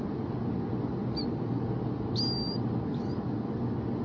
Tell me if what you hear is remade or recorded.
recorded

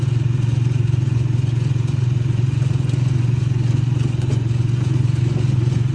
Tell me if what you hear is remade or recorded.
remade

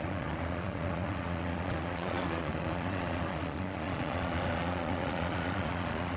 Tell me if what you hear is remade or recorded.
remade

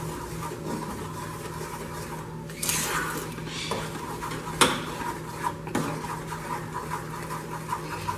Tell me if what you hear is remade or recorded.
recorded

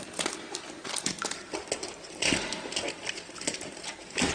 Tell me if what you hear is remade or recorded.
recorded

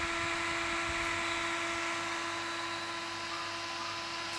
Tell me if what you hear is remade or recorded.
recorded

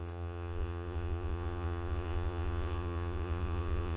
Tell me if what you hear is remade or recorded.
remade